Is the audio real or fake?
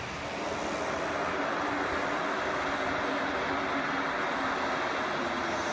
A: real